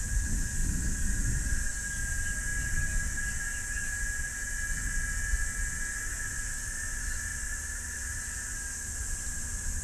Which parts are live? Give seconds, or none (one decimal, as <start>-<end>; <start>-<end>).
0.0-0.6; 1.7-2.5; 4.6-9.8